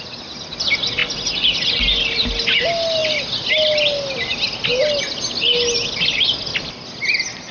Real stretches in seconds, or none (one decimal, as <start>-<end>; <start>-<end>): 0.0-7.5